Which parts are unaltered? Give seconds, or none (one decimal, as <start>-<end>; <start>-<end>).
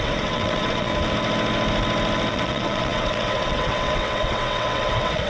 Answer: 0.9-2.3